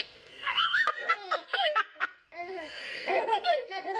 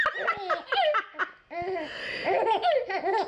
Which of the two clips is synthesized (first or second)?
first